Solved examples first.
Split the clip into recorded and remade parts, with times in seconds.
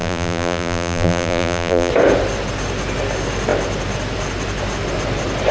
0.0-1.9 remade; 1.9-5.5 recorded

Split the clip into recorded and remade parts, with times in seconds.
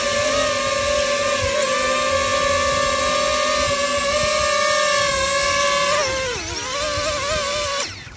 0.0-8.2 recorded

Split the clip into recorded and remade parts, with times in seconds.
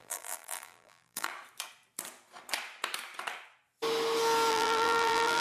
0.0-1.3 remade; 1.3-4.5 recorded; 4.5-5.4 remade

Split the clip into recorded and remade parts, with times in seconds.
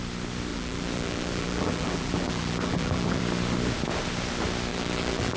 0.0-0.5 recorded; 0.5-3.2 remade; 3.2-4.7 recorded; 4.7-5.4 remade